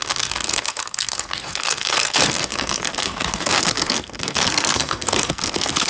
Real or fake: fake